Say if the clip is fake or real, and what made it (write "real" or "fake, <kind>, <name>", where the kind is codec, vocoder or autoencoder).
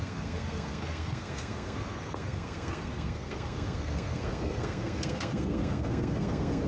fake, codec, SNAC